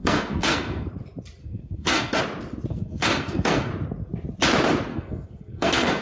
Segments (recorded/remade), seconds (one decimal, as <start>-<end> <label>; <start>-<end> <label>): 0.0-0.9 remade; 0.9-1.4 recorded; 1.4-2.2 remade; 2.2-2.7 recorded; 2.7-3.7 remade; 3.7-4.9 recorded; 4.9-6.0 remade